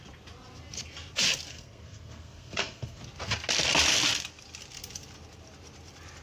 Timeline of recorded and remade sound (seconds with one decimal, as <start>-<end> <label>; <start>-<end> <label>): 0.0-1.5 recorded; 1.5-3.0 remade; 3.0-6.2 recorded